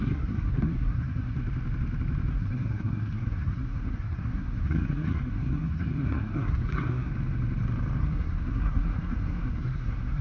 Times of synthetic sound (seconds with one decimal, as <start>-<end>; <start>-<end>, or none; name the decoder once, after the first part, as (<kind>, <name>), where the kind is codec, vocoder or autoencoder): 0.0-1.4 (codec, SNAC); 2.3-7.1; 8.0-10.2